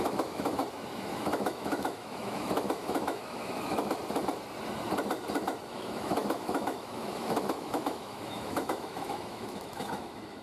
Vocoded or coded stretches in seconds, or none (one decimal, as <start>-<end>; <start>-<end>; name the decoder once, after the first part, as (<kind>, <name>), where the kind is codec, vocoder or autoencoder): 0.0-0.6 (autoencoder, DAC-VAE); 1.1-4.0; 5.7-10.4